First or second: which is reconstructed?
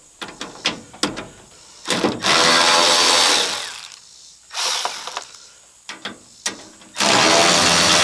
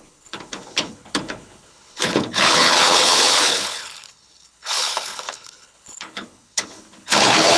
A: second